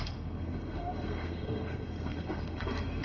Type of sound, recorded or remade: remade